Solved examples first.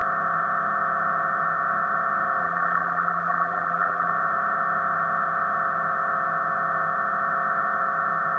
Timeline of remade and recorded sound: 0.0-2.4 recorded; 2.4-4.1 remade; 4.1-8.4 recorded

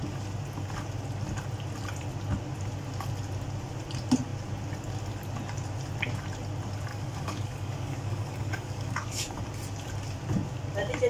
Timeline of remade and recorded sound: 0.0-6.9 recorded; 6.9-9.4 remade; 9.4-11.1 recorded

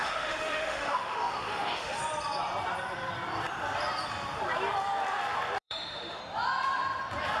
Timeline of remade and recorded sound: 0.0-2.0 remade; 2.0-5.6 recorded; 5.6-6.2 remade; 6.2-7.4 recorded

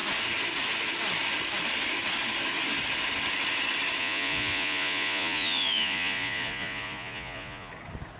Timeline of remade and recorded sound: 0.0-4.0 recorded; 4.0-7.7 remade; 7.7-8.2 recorded